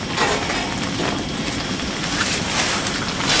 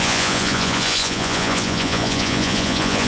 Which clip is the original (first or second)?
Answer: first